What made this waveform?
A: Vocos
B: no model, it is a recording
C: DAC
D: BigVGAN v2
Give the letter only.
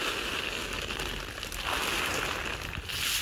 B